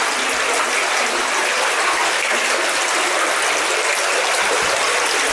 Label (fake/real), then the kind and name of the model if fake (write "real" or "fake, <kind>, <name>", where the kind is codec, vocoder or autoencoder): real